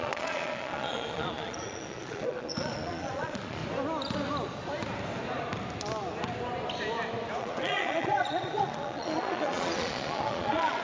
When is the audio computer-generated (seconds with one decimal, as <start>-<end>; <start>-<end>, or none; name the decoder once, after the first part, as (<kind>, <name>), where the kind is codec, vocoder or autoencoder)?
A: 0.0-3.6 (vocoder, Vocos); 7.4-10.8